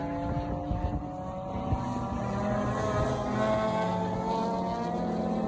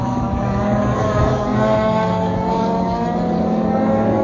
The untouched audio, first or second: first